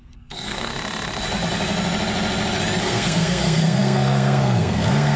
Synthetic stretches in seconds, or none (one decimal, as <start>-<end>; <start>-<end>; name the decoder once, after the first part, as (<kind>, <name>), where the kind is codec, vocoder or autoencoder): 0.0-0.7 (codec, SNAC); 2.8-5.2